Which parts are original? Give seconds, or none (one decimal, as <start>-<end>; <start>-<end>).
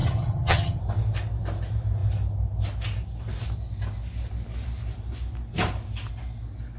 0.8-6.8